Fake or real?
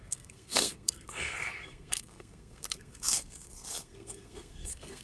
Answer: fake